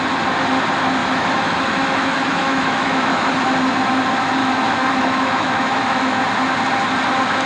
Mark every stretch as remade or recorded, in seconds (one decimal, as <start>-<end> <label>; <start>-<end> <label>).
0.0-1.0 recorded; 1.0-3.3 remade; 3.3-4.4 recorded; 4.4-6.2 remade; 6.2-7.5 recorded